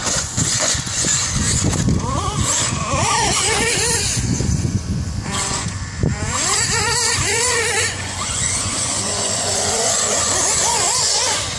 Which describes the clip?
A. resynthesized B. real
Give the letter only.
A